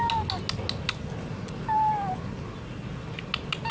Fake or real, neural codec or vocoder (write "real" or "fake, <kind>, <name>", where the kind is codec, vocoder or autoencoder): real